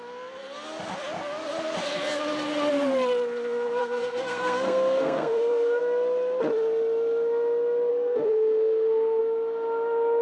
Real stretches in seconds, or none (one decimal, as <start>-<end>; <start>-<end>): 0.0-3.8; 5.8-7.9; 9.2-10.2